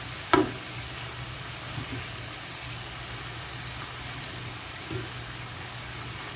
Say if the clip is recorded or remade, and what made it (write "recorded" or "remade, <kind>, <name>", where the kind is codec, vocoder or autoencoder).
recorded